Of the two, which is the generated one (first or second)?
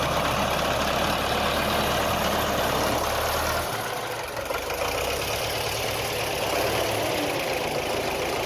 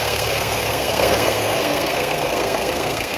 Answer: second